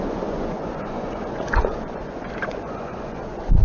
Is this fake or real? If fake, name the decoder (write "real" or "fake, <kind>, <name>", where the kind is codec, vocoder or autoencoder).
fake, vocoder, Vocos